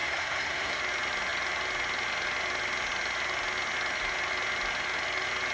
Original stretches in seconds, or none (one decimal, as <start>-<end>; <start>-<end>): 0.8-5.5